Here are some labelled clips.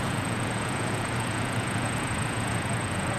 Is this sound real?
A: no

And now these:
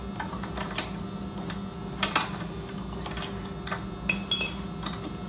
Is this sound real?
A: yes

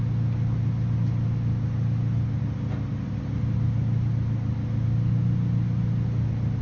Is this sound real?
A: yes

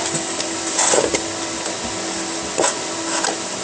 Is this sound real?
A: yes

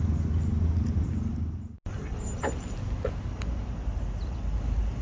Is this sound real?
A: yes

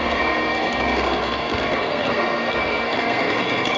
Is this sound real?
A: no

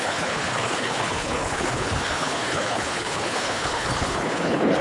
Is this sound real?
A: no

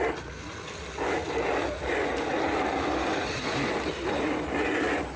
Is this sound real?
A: yes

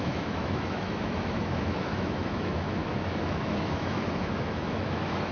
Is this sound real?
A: no